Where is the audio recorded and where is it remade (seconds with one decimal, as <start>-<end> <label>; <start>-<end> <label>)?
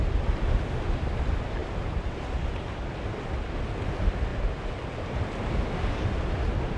0.0-1.6 recorded; 1.6-2.7 remade; 2.7-6.8 recorded